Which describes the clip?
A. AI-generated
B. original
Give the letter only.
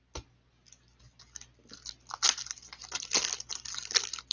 B